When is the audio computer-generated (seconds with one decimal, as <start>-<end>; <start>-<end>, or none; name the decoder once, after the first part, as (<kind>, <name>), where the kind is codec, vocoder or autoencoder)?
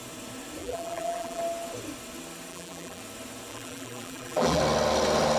0.6-1.4 (vocoder, BigVGAN v2); 2.5-3.0; 3.5-4.6